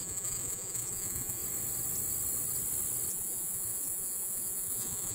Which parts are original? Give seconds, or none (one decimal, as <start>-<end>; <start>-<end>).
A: 1.4-3.1